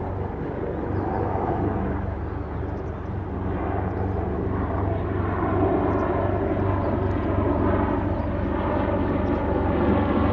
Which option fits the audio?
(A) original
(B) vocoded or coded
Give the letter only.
A